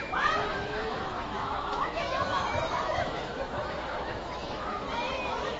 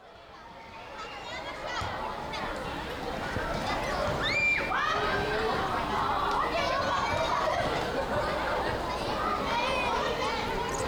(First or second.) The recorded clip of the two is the second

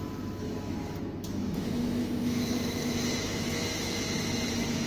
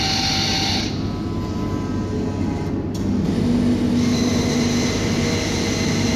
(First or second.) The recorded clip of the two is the second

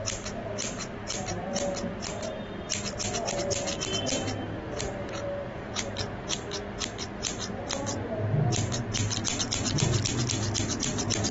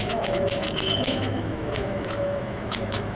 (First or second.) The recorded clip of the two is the first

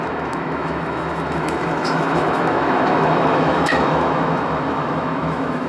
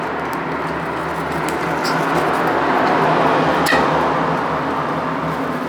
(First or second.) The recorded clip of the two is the second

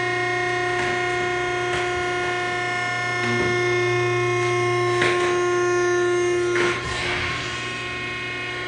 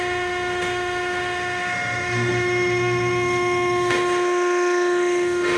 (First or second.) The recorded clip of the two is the first